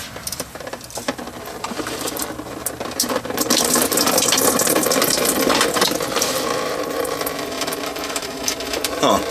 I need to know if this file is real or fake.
fake